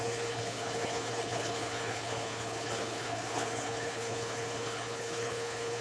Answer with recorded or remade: remade